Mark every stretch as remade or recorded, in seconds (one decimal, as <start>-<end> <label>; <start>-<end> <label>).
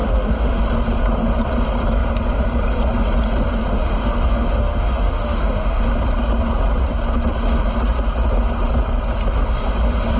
0.0-0.6 remade; 0.6-3.7 recorded; 3.7-5.8 remade; 5.8-10.2 recorded